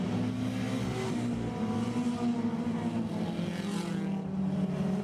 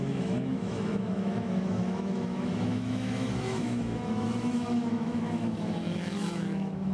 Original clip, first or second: first